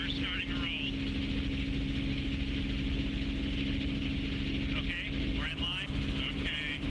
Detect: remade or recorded recorded